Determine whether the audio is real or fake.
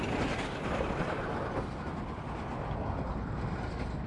real